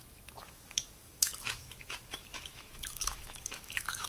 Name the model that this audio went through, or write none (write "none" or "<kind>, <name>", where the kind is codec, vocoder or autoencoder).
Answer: autoencoder, DAC-VAE